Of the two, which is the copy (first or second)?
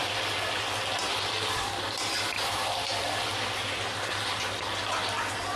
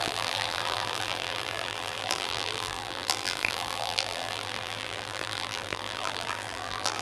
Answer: second